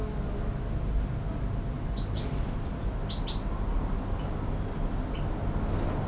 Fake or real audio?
real